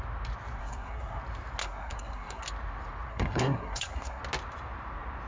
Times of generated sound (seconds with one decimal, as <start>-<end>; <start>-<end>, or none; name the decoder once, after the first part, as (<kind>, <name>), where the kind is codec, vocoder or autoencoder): 0.6-1.2 (codec, SNAC); 1.6-2.4; 3.1-4.2